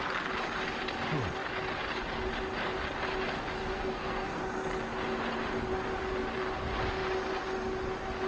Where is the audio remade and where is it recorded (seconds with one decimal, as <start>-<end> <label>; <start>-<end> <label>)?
0.0-3.6 recorded; 3.6-4.4 remade; 4.4-8.3 recorded